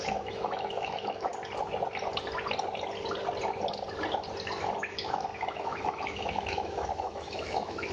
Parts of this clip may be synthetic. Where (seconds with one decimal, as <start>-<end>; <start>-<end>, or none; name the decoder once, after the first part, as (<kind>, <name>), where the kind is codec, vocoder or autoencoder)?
0.0-1.3 (autoencoder, DAC-VAE); 4.6-7.9